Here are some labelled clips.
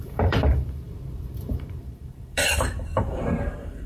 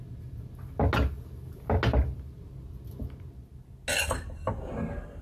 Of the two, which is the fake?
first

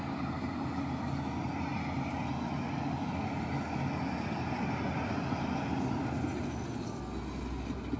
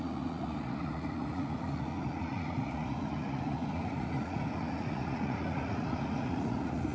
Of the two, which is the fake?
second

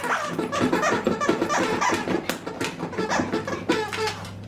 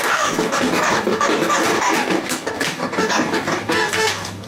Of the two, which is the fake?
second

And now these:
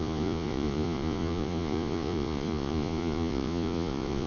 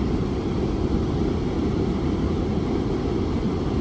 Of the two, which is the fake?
first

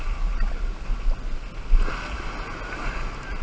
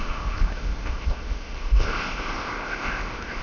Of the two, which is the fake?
second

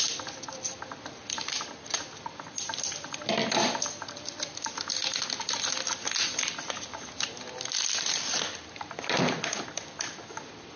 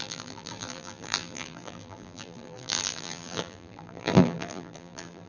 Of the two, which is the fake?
second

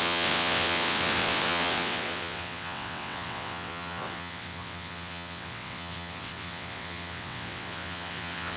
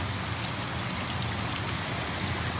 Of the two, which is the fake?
first